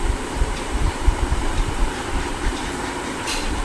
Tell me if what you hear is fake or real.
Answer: fake